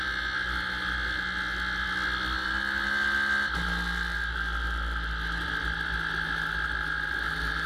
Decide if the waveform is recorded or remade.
recorded